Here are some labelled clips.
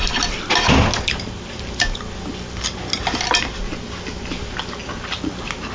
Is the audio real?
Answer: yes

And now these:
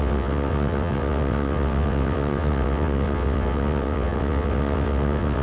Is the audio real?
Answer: no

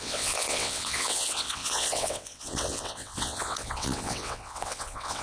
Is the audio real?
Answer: no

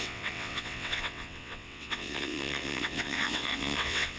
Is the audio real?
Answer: no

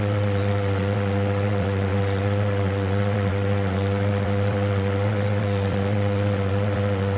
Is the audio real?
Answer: no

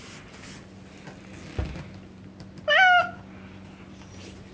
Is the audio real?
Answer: yes